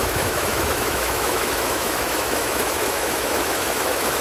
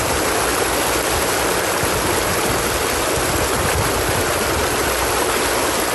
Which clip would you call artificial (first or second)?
first